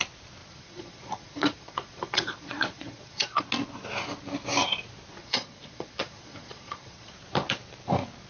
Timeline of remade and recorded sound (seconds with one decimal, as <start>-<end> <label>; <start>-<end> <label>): 0.0-0.4 recorded; 0.4-3.4 remade; 3.4-5.2 recorded; 5.2-7.1 remade; 7.1-8.3 recorded